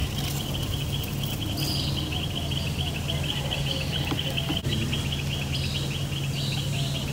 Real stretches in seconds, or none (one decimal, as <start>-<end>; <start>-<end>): 0.0-7.1